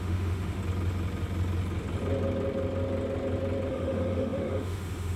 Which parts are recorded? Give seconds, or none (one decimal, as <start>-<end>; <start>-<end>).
0.6-3.7